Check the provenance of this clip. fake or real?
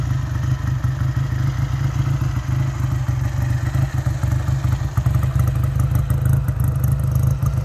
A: real